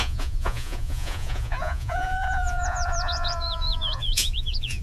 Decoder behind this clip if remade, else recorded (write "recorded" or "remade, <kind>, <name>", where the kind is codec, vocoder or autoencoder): remade, vocoder, Vocos